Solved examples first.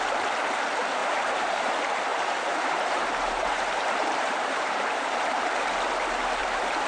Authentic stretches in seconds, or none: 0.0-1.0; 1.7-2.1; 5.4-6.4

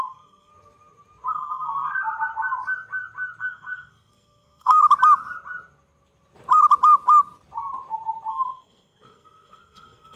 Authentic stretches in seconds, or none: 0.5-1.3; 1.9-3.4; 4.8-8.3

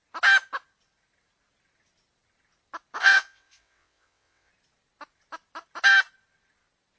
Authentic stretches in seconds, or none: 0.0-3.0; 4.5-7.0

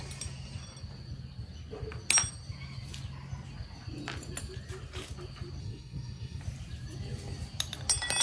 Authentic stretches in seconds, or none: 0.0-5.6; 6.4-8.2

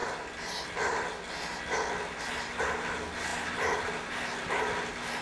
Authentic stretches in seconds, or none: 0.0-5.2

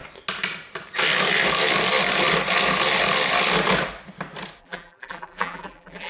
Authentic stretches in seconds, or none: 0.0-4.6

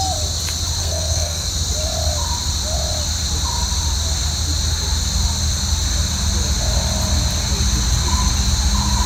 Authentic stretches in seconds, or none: 0.0-0.8; 1.5-9.1

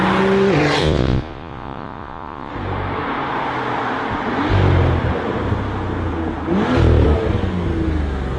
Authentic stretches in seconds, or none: 0.0-0.8; 2.5-8.4